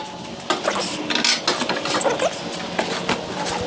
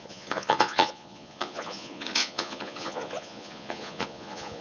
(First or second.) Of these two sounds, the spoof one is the second